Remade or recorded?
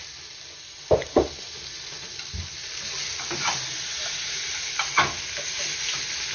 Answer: recorded